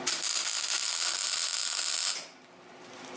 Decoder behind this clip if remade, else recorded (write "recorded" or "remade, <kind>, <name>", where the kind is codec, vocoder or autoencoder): recorded